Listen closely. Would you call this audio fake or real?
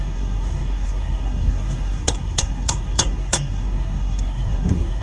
fake